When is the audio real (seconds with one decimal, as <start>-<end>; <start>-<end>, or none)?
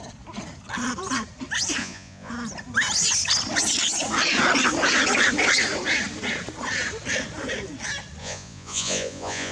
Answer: 0.0-1.8; 2.3-8.2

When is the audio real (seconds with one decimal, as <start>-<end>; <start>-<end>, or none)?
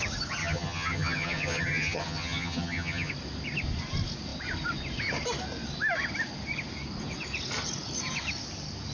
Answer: 0.0-0.4; 3.1-8.9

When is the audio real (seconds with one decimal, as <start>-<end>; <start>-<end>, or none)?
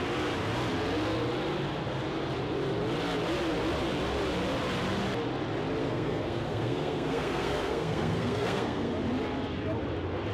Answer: 0.0-5.8; 8.9-10.3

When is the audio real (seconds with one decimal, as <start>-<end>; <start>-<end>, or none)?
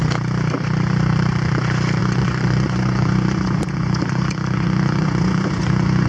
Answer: 0.0-2.0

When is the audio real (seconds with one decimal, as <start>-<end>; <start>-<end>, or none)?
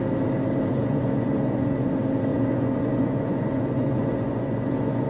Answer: 0.0-0.7; 1.9-2.3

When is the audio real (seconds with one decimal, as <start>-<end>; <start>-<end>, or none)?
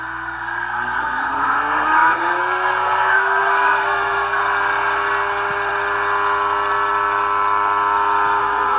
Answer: 4.4-8.4